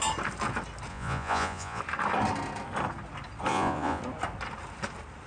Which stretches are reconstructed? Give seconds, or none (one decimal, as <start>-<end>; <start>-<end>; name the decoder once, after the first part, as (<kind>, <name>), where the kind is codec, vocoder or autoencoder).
0.9-1.8 (vocoder, Vocos); 3.5-4.0